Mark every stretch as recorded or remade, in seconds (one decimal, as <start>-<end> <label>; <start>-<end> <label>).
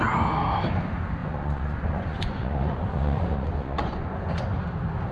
0.0-1.2 recorded; 1.2-4.3 remade; 4.3-5.1 recorded